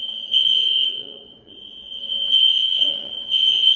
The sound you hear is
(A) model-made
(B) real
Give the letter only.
A